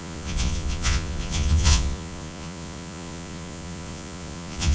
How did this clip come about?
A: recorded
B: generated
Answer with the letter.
B